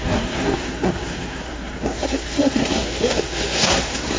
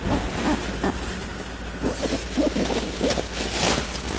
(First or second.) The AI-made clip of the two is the first